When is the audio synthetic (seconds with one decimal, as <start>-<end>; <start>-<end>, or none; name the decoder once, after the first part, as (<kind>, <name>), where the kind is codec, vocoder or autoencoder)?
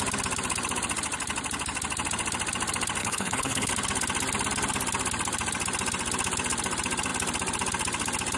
3.0-3.7 (codec, HILCodec)